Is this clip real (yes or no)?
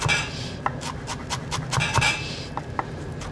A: yes